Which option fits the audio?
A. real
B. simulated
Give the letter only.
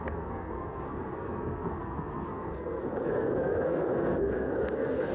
B